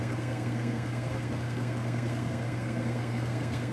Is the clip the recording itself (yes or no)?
no